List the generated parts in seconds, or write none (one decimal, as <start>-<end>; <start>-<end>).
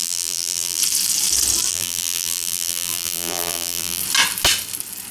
0.0-0.8; 1.7-4.0